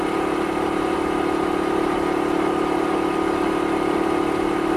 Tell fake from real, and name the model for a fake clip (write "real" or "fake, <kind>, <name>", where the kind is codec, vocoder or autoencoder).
real